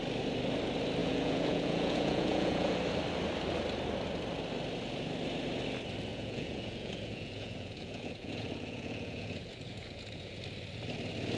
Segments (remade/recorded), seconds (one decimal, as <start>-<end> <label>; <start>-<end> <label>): 0.0-1.0 recorded; 1.0-2.8 remade; 2.8-6.1 recorded; 6.1-10.4 remade; 10.4-11.4 recorded